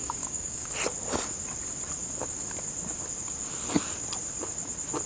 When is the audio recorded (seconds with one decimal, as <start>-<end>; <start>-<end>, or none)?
0.7-5.1